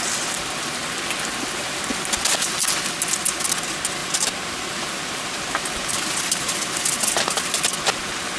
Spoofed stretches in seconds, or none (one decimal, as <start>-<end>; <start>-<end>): 4.0-6.7